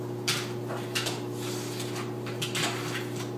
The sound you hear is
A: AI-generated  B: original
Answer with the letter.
B